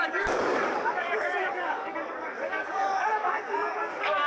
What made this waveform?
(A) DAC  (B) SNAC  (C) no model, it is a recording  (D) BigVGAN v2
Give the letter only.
A